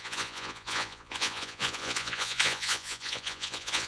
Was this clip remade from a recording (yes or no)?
yes